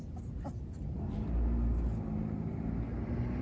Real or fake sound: real